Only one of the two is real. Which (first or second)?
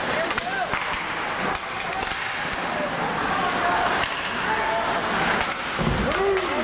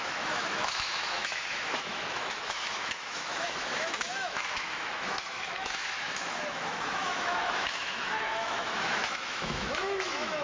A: first